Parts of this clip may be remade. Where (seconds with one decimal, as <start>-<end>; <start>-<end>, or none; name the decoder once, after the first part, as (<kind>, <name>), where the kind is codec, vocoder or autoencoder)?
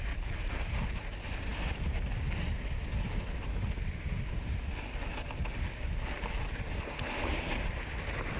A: none